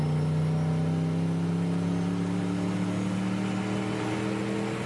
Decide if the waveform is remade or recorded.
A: recorded